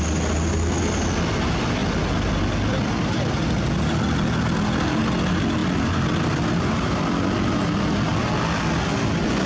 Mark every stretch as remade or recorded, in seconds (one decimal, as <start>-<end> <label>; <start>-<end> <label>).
0.0-9.5 recorded